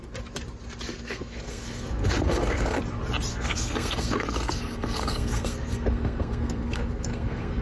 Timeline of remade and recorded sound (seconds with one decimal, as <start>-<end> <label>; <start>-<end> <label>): 0.0-0.9 recorded; 0.9-2.8 remade; 2.8-3.3 recorded; 3.3-7.6 remade